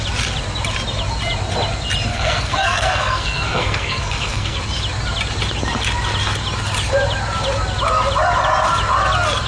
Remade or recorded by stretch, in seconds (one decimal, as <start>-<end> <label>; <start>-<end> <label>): 0.0-2.1 recorded; 2.1-4.6 remade; 4.6-9.5 recorded